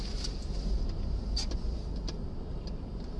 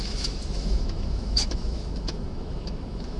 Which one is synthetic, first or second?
second